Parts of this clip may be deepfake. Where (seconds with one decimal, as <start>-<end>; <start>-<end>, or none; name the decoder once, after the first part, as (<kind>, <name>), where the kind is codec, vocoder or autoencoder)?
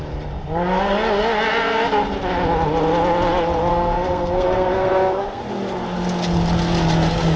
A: 3.7-5.4 (codec, SNAC)